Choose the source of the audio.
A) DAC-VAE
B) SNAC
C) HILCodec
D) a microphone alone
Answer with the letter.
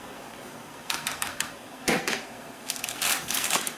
B